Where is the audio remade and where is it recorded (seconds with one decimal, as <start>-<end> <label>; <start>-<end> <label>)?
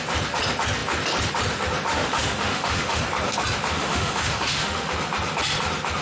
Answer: 0.0-1.9 recorded; 1.9-3.0 remade; 3.0-3.7 recorded; 3.7-4.9 remade; 4.9-6.0 recorded